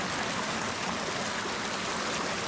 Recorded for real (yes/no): yes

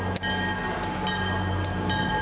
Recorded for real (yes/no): yes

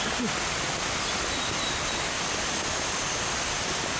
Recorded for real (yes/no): no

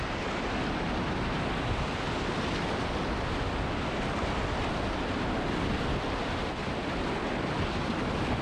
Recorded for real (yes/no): yes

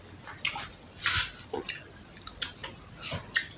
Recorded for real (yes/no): yes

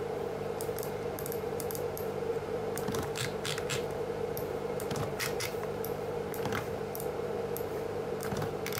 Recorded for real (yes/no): no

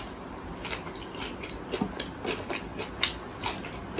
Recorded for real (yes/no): yes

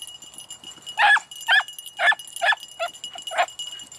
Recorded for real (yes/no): yes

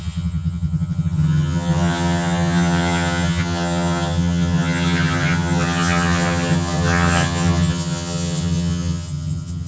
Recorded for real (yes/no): no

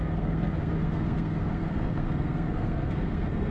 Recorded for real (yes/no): no